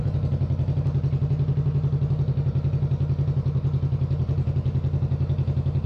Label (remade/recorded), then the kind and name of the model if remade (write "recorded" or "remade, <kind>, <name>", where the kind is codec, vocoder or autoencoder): recorded